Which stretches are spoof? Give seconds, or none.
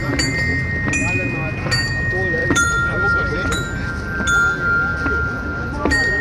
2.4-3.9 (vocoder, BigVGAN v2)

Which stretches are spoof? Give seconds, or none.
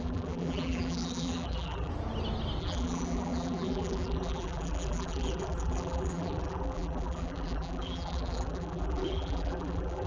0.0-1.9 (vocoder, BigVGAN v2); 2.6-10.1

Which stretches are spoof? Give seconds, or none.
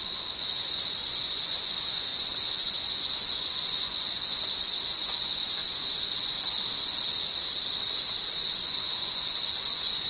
0.0-7.2 (vocoder, Vocos); 8.3-10.1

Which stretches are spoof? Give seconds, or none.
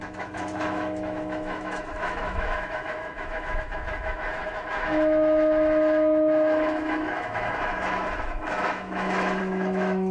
0.0-10.1 (autoencoder, DAC-VAE)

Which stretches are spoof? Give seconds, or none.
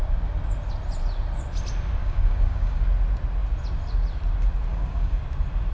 2.0-2.8 (codec, DAC); 4.7-5.2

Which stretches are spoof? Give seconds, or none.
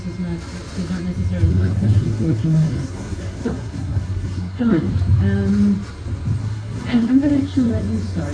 1.5-4.9 (codec, SNAC); 6.4-7.7